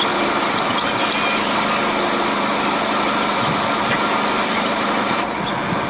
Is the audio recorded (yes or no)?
yes